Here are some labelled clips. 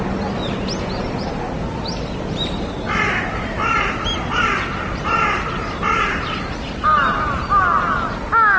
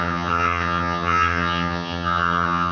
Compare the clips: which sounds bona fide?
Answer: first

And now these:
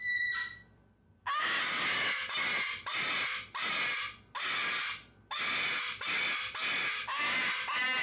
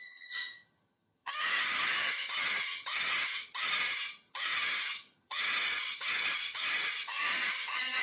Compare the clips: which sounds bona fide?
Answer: first